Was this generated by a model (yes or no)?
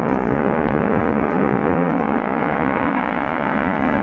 yes